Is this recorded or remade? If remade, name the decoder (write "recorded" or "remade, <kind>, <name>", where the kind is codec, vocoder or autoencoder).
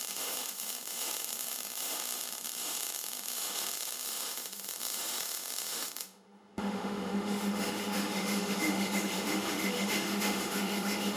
remade, autoencoder, DAC-VAE